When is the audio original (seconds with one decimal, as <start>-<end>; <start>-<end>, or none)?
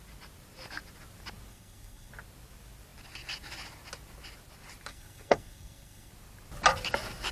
0.0-1.5; 2.1-4.9; 6.1-7.3